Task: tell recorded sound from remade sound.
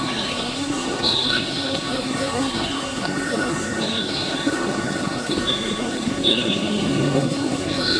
remade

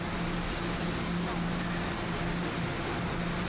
recorded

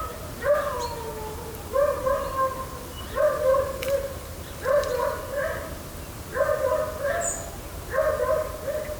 recorded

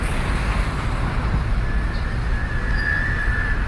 recorded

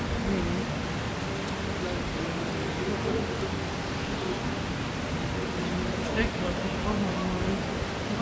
recorded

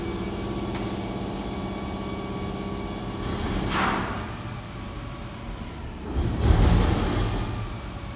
recorded